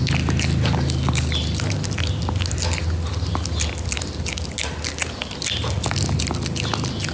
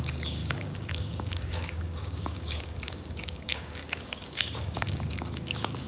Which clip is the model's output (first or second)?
second